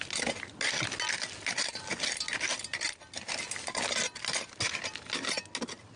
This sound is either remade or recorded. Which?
recorded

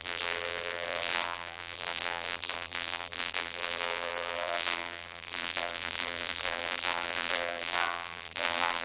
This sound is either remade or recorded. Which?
remade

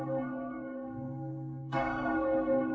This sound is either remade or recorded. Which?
remade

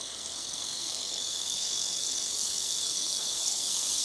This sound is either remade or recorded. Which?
remade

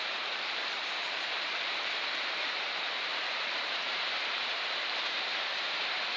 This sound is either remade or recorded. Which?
remade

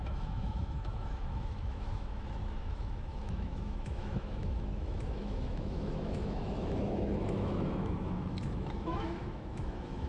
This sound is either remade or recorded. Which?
remade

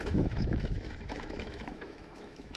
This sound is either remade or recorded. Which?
remade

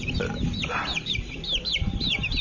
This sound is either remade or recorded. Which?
remade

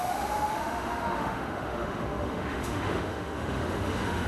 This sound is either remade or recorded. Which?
remade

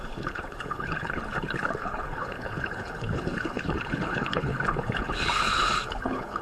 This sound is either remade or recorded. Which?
remade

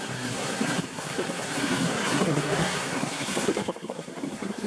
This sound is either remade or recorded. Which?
remade